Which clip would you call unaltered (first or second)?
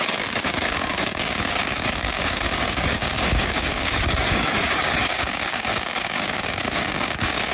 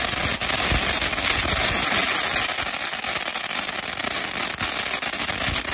second